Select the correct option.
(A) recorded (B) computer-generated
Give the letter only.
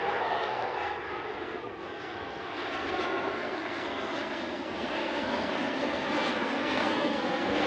B